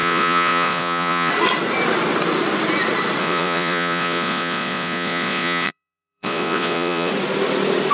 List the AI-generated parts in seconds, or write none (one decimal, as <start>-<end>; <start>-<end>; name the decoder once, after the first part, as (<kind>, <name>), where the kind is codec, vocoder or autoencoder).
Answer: 0.0-1.3 (vocoder, Vocos); 3.2-7.1